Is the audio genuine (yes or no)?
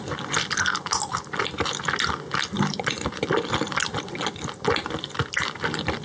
yes